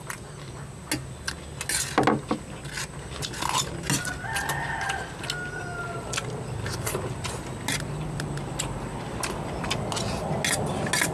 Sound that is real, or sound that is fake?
real